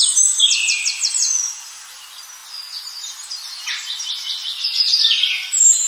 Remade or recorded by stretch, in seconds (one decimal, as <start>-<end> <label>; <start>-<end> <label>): 0.0-5.9 recorded